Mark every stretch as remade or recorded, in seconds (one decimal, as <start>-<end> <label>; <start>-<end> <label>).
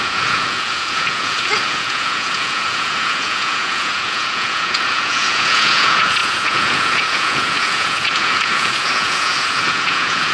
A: 0.0-10.3 remade